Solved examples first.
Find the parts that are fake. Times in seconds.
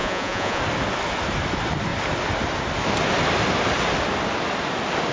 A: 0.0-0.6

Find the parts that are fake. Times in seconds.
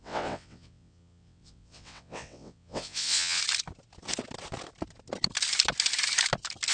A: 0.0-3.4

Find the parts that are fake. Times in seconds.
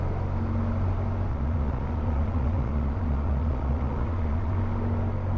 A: 1.3-4.5